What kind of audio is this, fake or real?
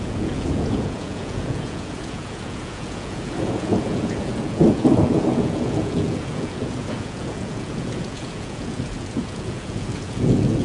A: fake